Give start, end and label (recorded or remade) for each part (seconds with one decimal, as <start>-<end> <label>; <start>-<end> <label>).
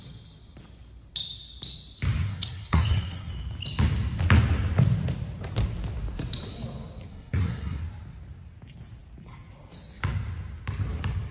0.0-2.3 recorded; 2.3-3.3 remade; 3.3-7.1 recorded; 7.1-7.8 remade; 7.8-11.3 recorded